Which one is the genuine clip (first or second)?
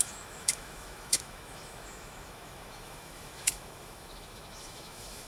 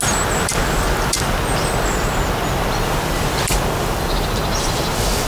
second